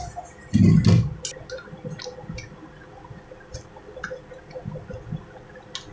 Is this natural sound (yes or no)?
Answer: yes